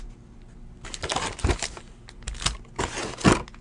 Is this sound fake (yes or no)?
no